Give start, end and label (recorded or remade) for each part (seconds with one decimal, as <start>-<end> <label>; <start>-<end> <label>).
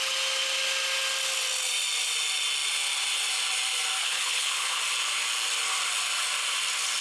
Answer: 0.0-4.0 recorded; 4.0-4.8 remade; 4.8-7.0 recorded